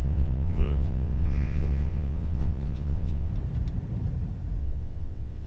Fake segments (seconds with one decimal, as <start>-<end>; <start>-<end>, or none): 0.0-3.3; 4.6-5.5